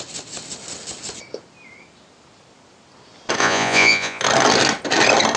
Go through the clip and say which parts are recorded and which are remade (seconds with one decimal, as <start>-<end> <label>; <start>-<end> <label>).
0.0-3.4 recorded; 3.4-4.2 remade; 4.2-5.4 recorded